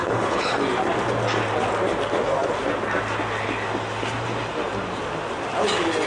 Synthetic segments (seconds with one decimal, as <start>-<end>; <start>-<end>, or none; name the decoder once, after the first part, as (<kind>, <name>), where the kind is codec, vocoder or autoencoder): 0.0-0.6 (codec, HILCodec)